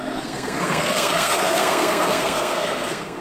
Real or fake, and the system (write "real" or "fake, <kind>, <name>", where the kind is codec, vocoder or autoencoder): fake, codec, SNAC